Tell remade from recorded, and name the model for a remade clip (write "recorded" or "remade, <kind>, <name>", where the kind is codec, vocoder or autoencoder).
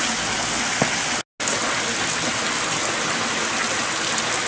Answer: recorded